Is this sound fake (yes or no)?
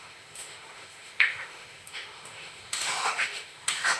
yes